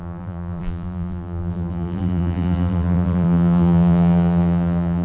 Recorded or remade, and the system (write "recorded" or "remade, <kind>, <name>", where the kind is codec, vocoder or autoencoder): remade, vocoder, BigVGAN v2